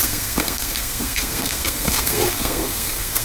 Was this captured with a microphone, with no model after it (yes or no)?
no